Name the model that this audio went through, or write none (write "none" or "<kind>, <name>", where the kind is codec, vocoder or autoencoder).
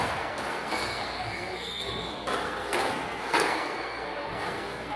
codec, SNAC